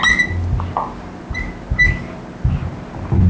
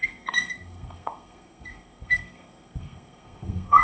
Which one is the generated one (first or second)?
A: second